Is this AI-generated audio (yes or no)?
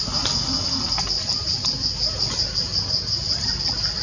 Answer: no